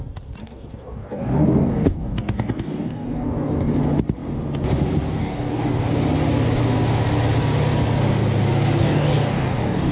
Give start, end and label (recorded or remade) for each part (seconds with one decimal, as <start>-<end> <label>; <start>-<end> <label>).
0.0-0.4 recorded; 0.4-3.8 remade; 3.8-5.2 recorded; 5.2-5.9 remade; 5.9-8.8 recorded; 8.8-9.9 remade